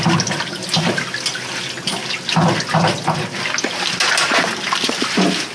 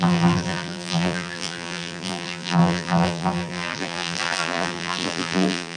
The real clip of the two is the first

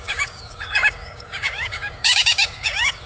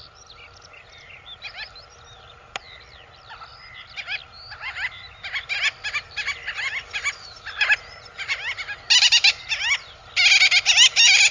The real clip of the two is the second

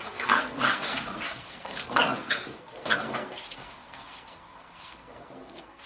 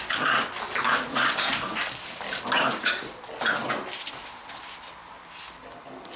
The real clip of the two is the second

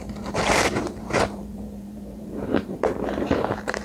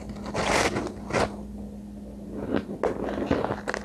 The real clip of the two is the second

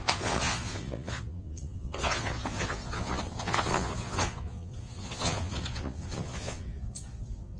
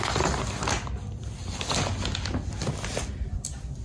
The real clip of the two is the second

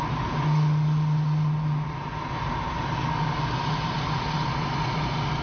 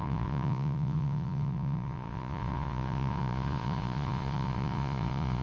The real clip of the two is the first